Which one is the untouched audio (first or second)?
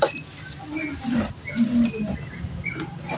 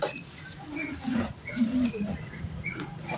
first